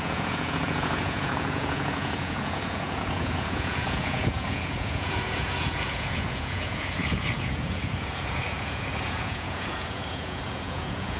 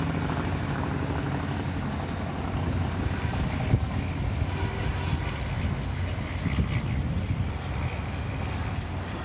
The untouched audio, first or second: second